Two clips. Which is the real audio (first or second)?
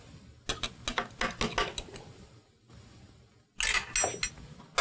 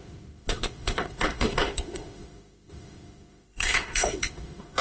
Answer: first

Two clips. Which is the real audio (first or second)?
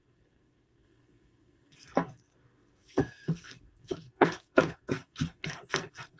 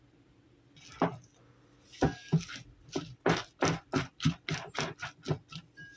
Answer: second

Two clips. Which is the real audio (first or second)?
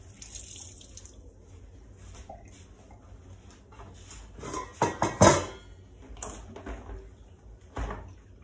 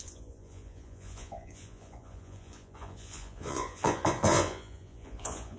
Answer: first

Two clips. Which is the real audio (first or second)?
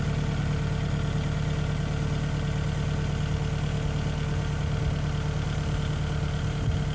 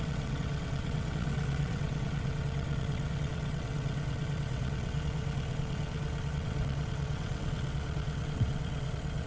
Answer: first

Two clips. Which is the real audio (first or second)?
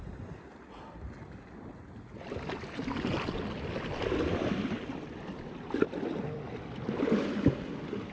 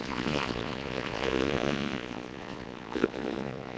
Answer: first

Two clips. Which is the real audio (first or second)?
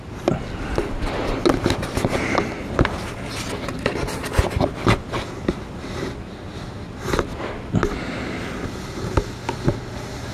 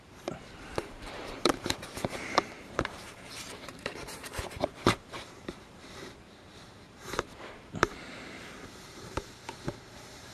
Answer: first